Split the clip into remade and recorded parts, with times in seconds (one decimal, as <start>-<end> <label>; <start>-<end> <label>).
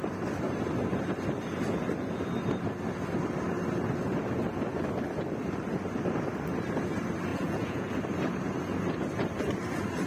0.0-7.3 recorded; 7.3-7.9 remade; 7.9-10.1 recorded